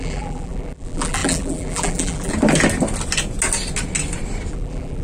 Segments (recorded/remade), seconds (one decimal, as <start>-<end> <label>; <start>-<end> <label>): 0.0-2.3 remade; 2.3-4.5 recorded; 4.5-5.0 remade